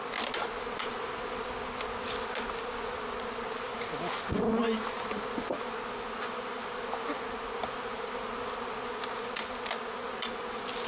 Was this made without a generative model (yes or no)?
yes